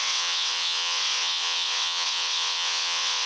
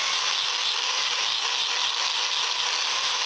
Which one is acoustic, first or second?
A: second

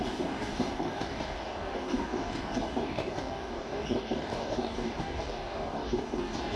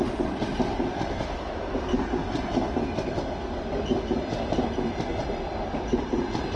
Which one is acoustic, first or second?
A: second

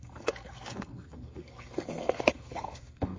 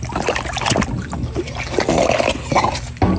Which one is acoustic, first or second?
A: second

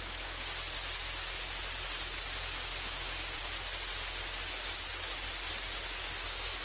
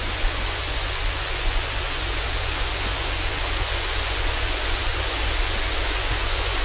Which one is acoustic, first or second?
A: first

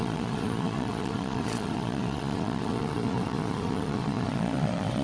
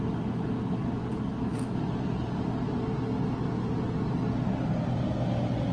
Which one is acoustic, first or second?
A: second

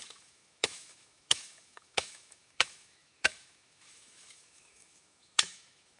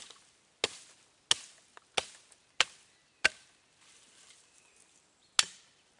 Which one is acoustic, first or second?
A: second